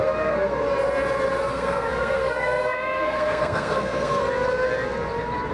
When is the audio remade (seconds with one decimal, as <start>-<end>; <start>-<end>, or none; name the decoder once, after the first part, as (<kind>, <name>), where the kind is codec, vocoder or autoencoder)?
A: 0.0-0.6 (codec, SNAC); 1.5-4.2